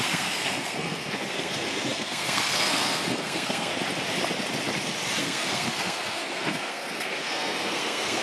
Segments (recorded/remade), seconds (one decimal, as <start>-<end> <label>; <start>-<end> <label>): 0.0-3.7 remade; 3.7-5.2 recorded; 5.2-8.2 remade